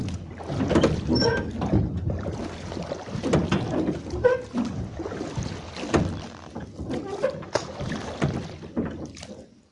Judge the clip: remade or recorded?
recorded